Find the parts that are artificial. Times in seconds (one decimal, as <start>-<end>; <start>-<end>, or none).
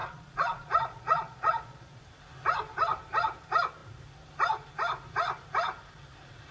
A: 0.0-2.0